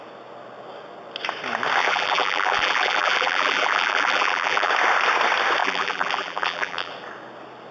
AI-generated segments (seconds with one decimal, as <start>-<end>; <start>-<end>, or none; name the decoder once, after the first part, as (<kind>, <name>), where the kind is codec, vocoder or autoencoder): 1.8-4.7 (vocoder, BigVGAN v2); 5.6-6.9

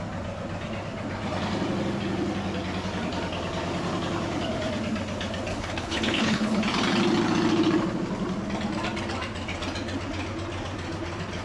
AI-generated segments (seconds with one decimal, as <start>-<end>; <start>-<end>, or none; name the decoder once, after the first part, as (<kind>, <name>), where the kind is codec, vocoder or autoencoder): 5.5-6.6 (codec, HILCodec)